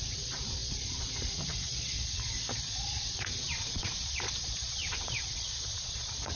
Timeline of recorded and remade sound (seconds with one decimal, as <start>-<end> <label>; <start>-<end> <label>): 0.0-6.4 remade